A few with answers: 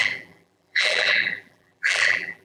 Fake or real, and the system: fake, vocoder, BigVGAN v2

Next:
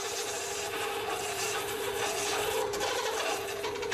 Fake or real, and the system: fake, vocoder, BigVGAN v2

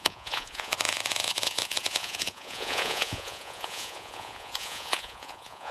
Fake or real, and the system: fake, vocoder, Vocos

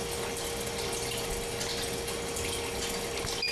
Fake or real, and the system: real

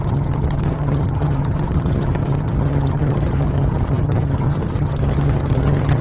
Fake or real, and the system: fake, vocoder, HiFi-GAN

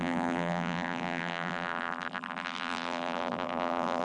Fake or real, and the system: fake, vocoder, BigVGAN v2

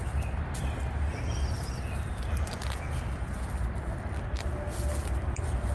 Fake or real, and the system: real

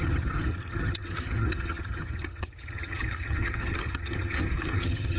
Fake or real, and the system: fake, vocoder, HiFi-GAN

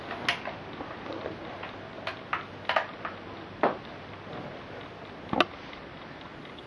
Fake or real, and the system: real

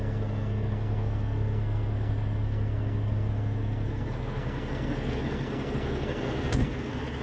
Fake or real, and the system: fake, codec, SNAC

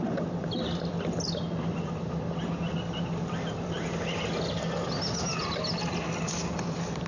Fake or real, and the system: real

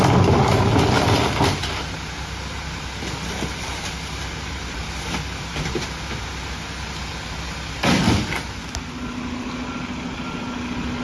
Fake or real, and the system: real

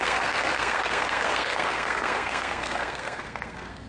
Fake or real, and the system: fake, codec, SNAC